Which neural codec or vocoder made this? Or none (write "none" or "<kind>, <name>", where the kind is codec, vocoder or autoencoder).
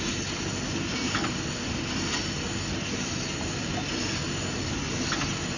none